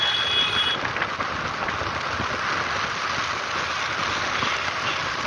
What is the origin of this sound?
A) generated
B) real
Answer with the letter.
B